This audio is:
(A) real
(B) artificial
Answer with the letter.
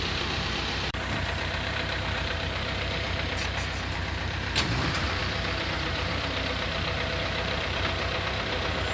B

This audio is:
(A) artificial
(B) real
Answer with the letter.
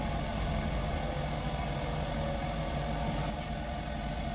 B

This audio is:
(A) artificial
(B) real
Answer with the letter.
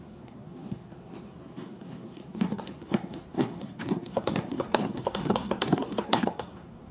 A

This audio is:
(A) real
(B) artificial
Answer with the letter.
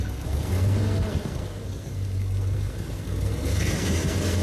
B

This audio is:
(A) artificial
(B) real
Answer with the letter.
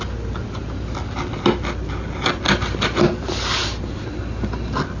B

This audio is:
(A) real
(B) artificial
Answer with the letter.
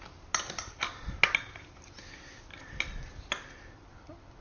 A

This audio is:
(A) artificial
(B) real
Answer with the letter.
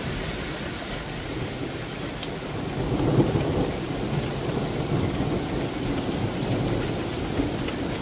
B